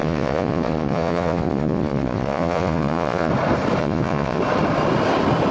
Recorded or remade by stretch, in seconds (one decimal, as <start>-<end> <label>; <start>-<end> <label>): 0.0-3.3 remade; 3.3-3.8 recorded; 3.8-4.4 remade; 4.4-5.5 recorded